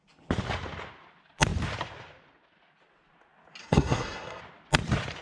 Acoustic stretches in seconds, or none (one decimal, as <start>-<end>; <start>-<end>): 0.0-3.6; 4.4-5.2